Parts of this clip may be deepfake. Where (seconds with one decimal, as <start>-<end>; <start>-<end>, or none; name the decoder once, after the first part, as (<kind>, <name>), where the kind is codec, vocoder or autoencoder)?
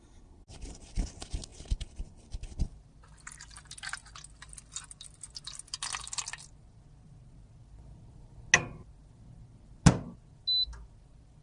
none